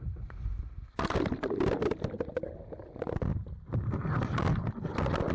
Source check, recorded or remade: recorded